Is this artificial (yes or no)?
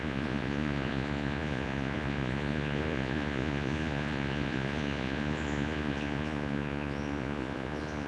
yes